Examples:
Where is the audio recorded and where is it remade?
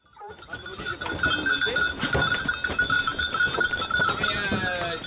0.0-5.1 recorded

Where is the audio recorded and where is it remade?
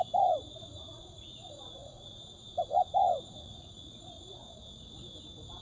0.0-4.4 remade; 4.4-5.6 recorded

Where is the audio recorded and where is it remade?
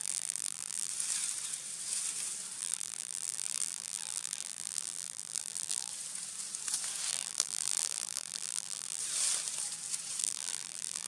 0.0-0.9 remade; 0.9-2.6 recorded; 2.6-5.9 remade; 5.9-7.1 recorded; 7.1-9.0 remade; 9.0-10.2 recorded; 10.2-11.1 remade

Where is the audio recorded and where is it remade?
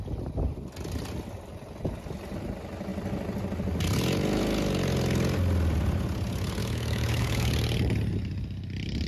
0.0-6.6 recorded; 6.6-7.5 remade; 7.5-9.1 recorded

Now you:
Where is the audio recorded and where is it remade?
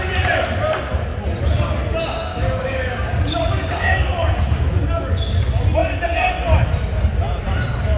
0.0-2.3 recorded; 2.3-4.3 remade; 4.3-8.0 recorded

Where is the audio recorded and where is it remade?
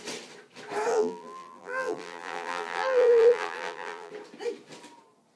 0.0-0.9 recorded; 0.9-4.1 remade; 4.1-5.4 recorded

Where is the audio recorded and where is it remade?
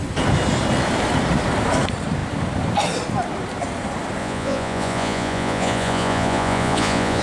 0.0-4.2 recorded; 4.2-7.2 remade